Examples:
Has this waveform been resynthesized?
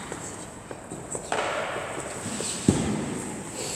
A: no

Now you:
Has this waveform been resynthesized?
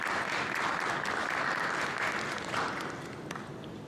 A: no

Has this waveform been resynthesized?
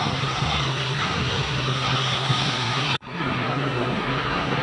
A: yes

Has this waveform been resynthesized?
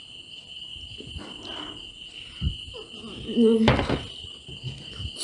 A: no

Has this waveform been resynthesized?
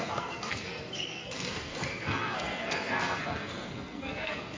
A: yes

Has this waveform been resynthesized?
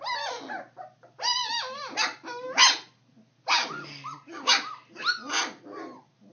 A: no